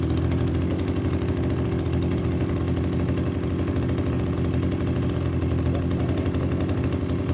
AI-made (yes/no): no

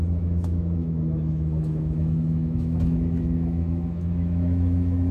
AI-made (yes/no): yes